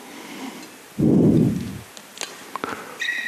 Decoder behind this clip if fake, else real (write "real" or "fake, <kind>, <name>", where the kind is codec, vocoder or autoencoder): real